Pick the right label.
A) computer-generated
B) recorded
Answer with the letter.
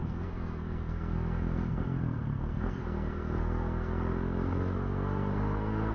A